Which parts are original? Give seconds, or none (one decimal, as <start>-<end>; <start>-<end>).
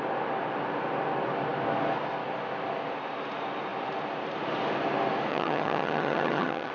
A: 0.0-5.3